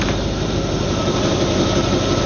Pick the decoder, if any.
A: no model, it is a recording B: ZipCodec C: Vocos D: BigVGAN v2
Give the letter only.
D